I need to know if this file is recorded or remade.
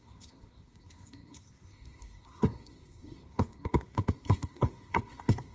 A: remade